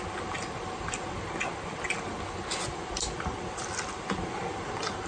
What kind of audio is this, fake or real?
real